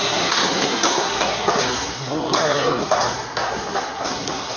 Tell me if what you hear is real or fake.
fake